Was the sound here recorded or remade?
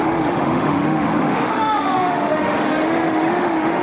remade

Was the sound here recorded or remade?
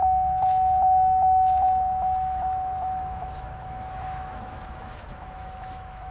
remade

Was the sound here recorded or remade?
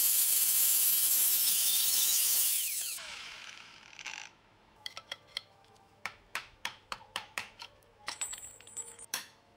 remade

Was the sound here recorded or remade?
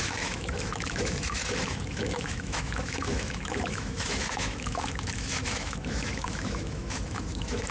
remade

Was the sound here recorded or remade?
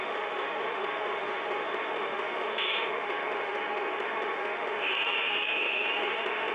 remade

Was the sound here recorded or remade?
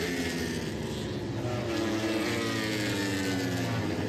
recorded